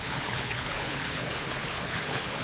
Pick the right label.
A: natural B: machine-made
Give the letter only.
B